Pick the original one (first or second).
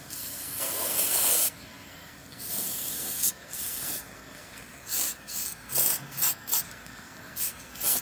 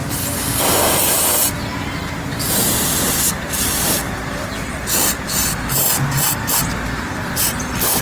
second